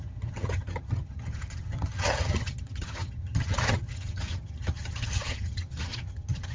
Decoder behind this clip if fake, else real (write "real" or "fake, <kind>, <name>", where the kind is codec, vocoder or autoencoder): fake, vocoder, HiFi-GAN